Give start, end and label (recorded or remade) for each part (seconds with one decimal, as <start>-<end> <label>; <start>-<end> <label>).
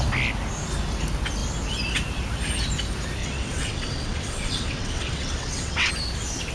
0.0-3.2 recorded; 3.2-5.9 remade; 5.9-6.5 recorded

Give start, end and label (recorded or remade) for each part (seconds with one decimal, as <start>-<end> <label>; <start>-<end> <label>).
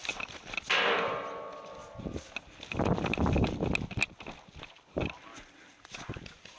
0.0-6.6 recorded